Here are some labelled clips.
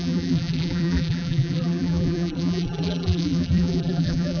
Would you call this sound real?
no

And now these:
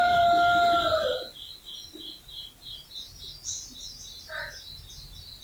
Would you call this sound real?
yes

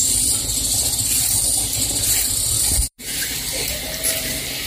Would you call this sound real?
no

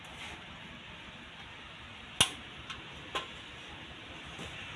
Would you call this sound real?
yes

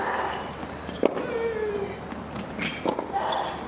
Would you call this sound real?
yes